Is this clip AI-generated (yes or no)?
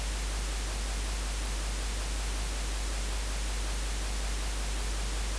no